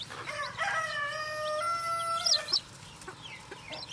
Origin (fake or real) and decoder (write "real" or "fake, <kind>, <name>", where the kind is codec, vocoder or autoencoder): real